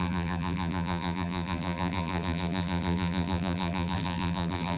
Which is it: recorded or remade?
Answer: remade